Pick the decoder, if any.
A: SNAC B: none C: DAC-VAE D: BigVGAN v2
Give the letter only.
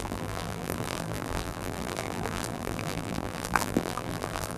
D